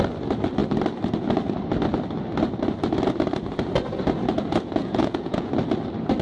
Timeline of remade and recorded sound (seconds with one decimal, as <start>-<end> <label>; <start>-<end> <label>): 0.0-4.8 recorded; 4.8-5.5 remade; 5.5-6.2 recorded